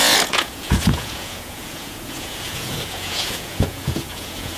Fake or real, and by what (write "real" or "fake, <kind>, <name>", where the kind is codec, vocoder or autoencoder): fake, vocoder, Vocos